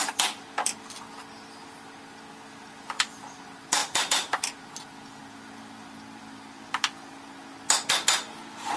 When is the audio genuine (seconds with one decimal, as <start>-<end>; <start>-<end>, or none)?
0.0-3.8; 4.6-8.8